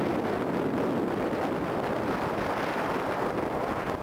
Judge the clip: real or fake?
real